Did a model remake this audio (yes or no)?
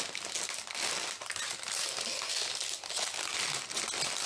no